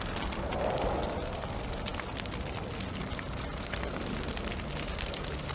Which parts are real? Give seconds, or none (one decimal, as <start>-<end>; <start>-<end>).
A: 0.0-5.5